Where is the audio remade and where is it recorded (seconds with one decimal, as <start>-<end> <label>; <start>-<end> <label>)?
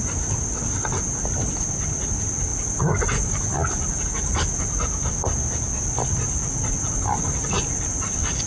0.0-8.5 recorded